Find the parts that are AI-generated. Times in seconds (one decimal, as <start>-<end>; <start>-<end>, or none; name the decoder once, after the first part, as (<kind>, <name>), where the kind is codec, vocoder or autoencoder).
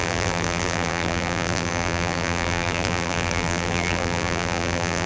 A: 0.0-5.1 (vocoder, BigVGAN v2)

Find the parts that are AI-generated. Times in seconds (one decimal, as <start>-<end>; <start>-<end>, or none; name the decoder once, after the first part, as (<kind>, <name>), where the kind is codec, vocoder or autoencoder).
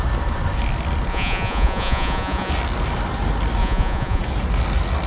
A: 1.1-2.5 (vocoder, Vocos); 3.6-4.2